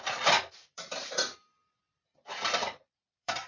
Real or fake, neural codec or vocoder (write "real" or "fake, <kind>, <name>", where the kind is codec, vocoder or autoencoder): fake, vocoder, BigVGAN v2